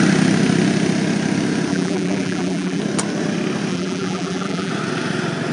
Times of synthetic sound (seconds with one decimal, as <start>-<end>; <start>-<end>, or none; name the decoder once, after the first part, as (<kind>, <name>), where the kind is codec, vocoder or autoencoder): 1.7-2.8 (vocoder, BigVGAN v2); 3.7-4.7